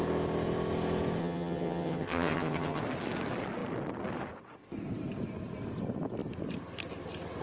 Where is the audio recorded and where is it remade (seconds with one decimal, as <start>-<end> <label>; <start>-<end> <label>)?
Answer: 0.0-1.2 recorded; 1.2-2.8 remade; 2.8-7.4 recorded